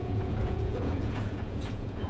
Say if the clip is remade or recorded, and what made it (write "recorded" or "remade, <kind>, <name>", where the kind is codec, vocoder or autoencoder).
remade, vocoder, Vocos